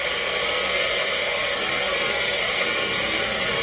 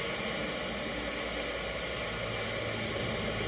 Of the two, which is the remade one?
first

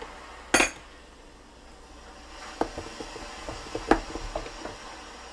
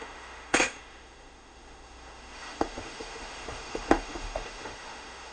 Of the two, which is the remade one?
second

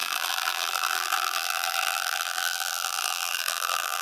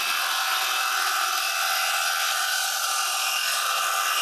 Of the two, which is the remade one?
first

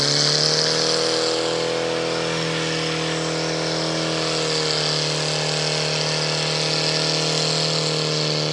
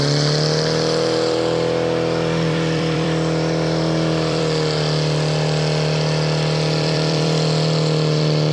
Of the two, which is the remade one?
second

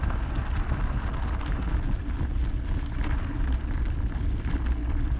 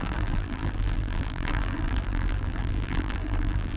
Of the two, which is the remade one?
second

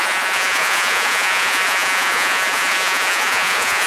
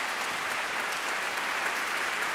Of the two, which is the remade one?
first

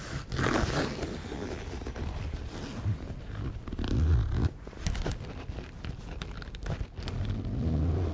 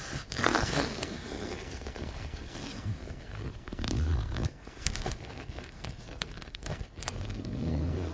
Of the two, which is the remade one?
second